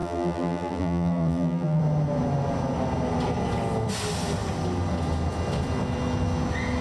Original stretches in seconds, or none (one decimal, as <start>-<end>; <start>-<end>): 1.8-6.8